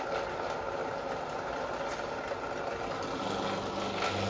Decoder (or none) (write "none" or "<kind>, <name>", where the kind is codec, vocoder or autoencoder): none